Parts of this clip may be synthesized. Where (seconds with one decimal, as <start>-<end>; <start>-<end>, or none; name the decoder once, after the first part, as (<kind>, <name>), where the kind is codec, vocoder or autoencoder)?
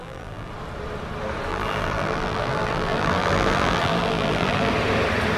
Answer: 0.0-0.5 (vocoder, BigVGAN v2); 1.5-4.7